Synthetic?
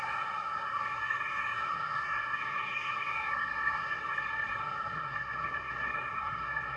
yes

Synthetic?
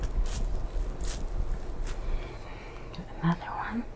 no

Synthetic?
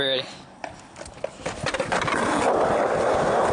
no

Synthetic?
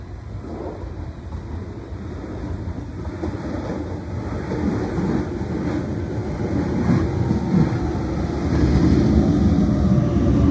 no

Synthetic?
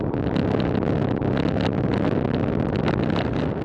no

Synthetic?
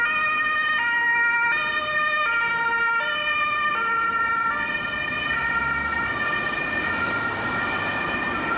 no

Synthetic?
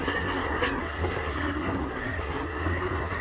yes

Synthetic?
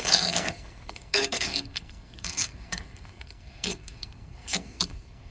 yes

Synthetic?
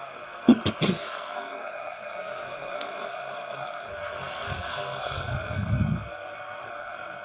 yes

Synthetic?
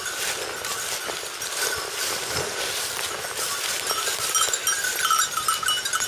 no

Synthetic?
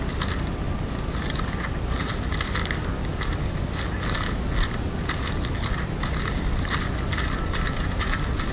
no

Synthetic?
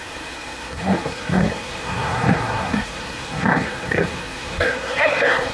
yes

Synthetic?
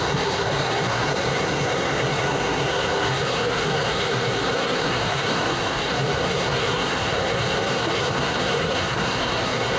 yes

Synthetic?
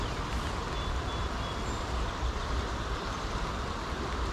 no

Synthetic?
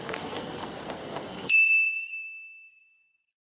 yes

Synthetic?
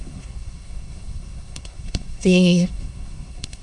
yes